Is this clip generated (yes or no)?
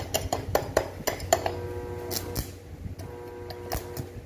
no